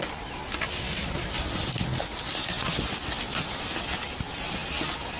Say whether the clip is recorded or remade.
recorded